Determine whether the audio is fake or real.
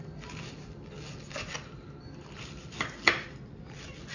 real